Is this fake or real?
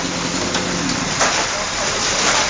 real